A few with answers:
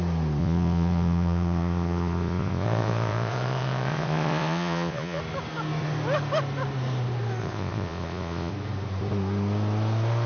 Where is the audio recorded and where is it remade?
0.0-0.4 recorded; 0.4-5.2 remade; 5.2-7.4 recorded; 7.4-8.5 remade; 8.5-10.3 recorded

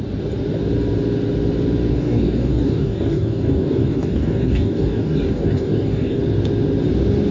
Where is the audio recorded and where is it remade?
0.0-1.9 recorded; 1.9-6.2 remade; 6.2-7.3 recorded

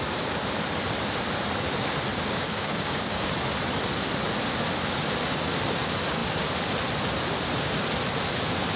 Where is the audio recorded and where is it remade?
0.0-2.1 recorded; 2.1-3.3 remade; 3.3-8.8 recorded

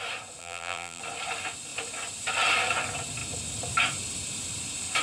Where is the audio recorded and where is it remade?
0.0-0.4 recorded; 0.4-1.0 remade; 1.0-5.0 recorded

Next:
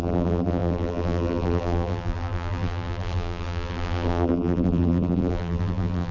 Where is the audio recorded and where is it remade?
0.0-6.1 remade

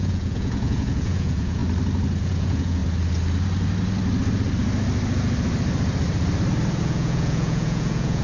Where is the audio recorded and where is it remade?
0.0-1.6 remade; 1.6-2.2 recorded; 2.2-2.8 remade; 2.8-6.8 recorded; 6.8-8.2 remade

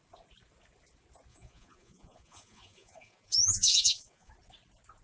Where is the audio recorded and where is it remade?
0.0-1.3 recorded; 1.3-4.3 remade; 4.3-5.0 recorded